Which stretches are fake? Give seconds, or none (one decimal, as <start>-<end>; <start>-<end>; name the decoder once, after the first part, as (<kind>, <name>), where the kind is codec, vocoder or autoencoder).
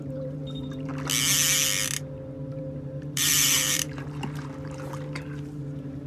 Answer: 0.0-0.9 (vocoder, BigVGAN v2); 2.5-6.1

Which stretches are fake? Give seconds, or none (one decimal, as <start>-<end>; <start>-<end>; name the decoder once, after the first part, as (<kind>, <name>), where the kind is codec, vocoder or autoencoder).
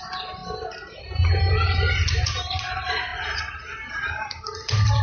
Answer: 0.0-0.4 (vocoder, BigVGAN v2); 1.0-5.0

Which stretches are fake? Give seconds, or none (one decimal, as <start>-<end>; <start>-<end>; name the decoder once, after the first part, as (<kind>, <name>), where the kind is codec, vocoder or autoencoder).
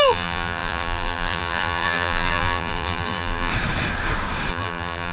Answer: 0.0-3.5 (vocoder, BigVGAN v2); 4.5-5.1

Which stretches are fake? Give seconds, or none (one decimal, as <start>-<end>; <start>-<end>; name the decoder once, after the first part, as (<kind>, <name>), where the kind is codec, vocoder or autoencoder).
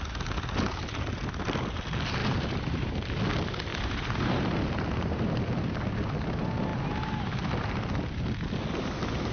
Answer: 2.2-3.2 (vocoder, BigVGAN v2); 3.7-4.4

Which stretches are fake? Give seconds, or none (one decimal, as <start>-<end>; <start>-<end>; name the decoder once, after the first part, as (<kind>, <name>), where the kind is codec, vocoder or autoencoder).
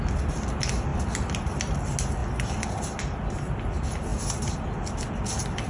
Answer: 0.9-1.8 (vocoder, BigVGAN v2); 4.1-5.7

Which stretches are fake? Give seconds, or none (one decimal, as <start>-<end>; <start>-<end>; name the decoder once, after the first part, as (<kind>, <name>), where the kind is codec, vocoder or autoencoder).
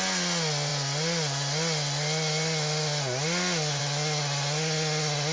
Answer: none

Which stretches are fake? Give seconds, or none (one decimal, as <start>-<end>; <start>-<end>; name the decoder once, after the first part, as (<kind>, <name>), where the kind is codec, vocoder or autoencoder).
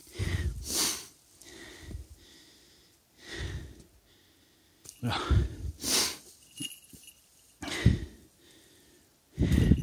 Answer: none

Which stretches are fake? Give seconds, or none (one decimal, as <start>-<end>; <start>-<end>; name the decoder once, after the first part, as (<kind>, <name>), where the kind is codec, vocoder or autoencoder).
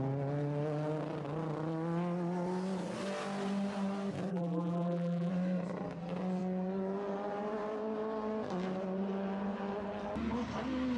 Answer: 4.3-5.3 (vocoder, BigVGAN v2)